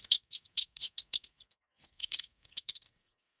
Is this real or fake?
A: fake